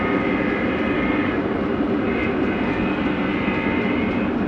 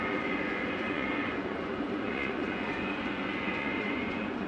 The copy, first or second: second